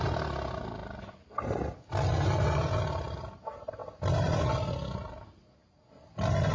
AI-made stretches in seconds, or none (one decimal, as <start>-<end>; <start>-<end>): none